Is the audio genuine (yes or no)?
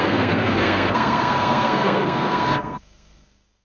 no